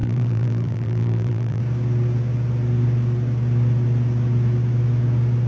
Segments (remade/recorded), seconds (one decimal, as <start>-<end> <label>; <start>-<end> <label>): 0.0-1.6 remade; 1.6-5.5 recorded